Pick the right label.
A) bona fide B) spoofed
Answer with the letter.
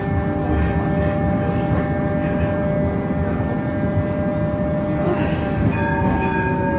A